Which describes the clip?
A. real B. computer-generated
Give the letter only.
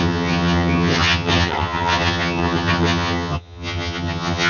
B